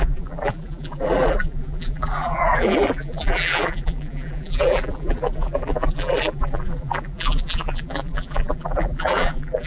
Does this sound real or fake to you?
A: fake